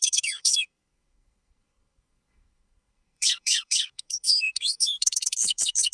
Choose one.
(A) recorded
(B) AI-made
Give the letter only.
B